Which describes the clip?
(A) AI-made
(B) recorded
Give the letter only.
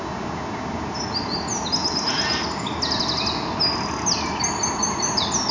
B